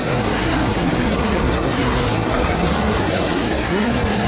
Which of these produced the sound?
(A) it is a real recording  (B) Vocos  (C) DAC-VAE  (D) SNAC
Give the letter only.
D